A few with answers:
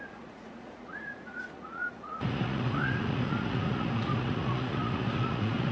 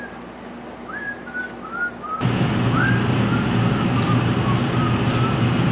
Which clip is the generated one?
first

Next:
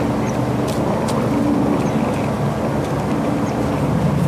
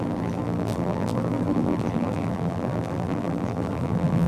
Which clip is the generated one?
second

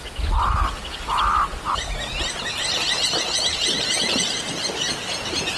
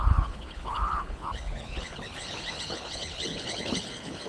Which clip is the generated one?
second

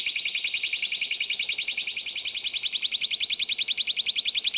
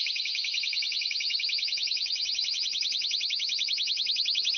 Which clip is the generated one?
second